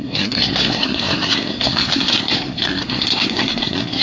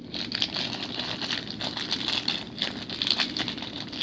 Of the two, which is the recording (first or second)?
second